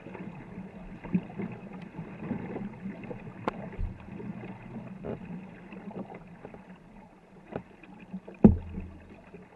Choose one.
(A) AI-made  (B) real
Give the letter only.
B